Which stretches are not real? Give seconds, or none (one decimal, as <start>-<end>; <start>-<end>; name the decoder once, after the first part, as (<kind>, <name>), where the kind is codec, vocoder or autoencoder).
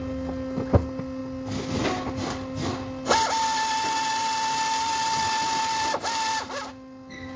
none